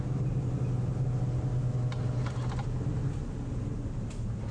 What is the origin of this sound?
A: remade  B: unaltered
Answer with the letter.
B